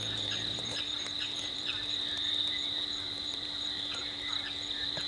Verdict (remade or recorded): remade